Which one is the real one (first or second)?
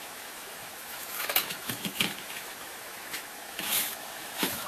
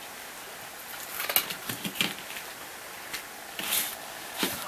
second